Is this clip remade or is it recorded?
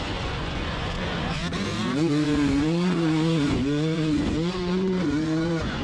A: remade